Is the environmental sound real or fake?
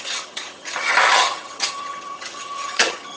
fake